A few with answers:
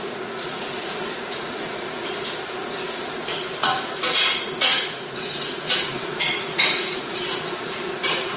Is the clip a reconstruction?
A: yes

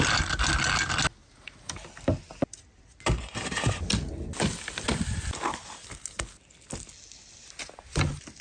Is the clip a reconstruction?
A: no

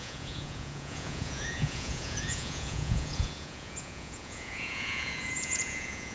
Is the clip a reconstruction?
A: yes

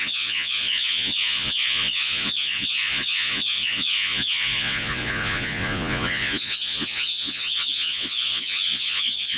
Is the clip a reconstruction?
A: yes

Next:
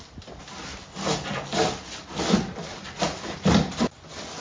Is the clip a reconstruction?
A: no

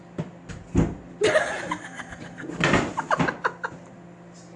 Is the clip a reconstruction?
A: no